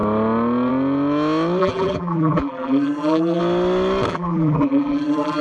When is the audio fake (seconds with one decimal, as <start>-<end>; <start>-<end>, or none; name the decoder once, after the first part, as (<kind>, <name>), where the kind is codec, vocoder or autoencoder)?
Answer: 1.6-3.4 (vocoder, BigVGAN v2); 4.1-5.4